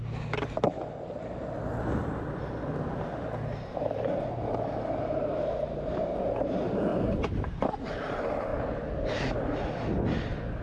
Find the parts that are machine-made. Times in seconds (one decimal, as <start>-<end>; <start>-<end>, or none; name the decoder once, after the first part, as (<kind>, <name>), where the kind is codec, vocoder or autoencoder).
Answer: 3.5-5.3 (vocoder, BigVGAN v2); 6.9-8.0